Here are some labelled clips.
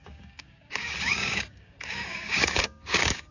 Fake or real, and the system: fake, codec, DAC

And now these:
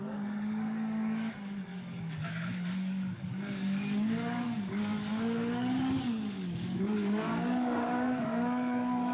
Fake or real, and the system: fake, codec, DAC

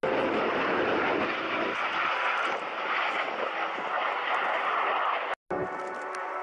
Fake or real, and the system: real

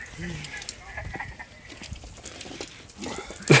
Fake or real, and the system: real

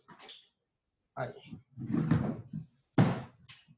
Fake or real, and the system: real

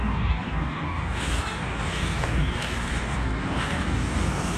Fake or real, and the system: fake, codec, DAC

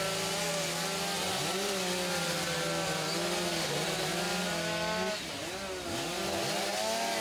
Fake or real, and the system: real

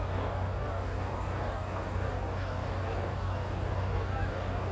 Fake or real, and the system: fake, codec, DAC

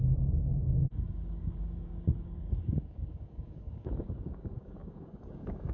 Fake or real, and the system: fake, codec, DAC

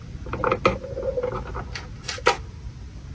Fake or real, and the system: real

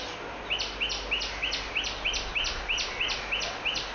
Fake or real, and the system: real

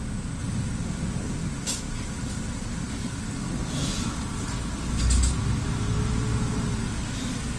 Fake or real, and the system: real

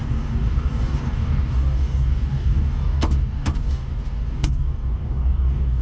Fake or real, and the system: fake, codec, DAC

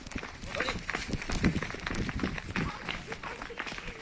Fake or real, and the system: real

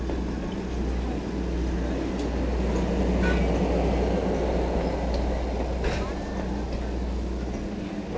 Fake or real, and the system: real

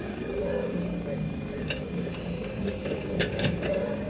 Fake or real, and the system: fake, codec, DAC